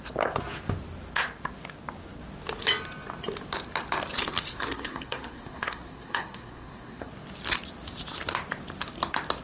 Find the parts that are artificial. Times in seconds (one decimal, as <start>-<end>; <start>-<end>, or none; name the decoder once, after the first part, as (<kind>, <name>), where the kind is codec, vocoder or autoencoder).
4.5-7.1 (codec, SNAC)